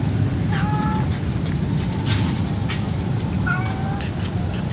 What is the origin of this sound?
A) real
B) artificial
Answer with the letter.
A